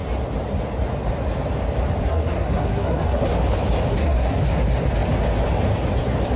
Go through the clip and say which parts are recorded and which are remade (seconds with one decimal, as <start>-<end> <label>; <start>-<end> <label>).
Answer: 0.0-2.0 recorded; 2.0-3.3 remade; 3.3-3.9 recorded; 3.9-4.4 remade; 4.4-6.4 recorded